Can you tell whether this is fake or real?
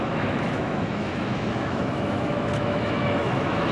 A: fake